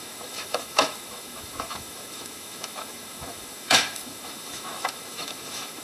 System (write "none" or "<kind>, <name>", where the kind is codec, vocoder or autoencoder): autoencoder, DAC-VAE